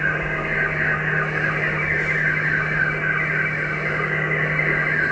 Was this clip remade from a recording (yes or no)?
no